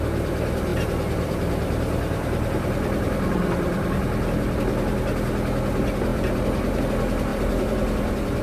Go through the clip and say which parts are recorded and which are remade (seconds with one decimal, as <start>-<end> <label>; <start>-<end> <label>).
0.0-0.7 recorded; 0.7-4.6 remade; 4.6-6.1 recorded; 6.1-6.8 remade; 6.8-7.3 recorded; 7.3-8.4 remade